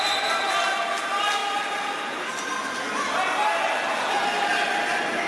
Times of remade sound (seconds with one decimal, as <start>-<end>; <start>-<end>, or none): none